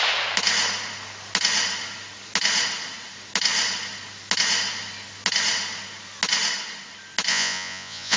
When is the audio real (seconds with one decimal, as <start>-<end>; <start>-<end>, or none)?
0.0-7.3